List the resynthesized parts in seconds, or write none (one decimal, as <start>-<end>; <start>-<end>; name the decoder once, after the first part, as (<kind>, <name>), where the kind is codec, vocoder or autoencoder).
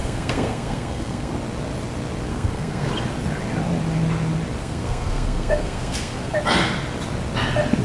0.0-1.3 (codec, SNAC); 2.3-2.9; 4.6-6.4